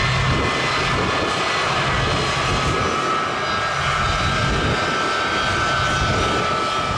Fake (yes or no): no